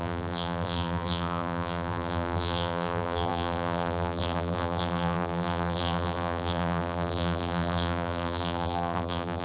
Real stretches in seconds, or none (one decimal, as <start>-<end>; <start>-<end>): none